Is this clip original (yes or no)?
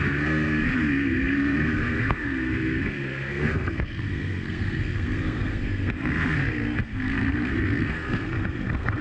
no